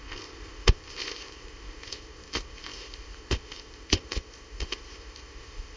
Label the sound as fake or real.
fake